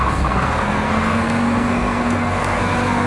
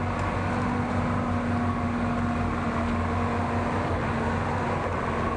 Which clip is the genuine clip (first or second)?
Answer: second